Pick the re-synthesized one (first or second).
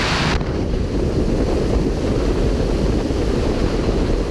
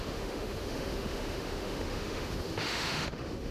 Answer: second